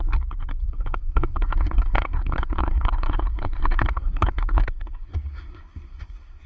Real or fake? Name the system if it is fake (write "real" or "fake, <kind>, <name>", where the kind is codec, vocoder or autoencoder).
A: fake, codec, SNAC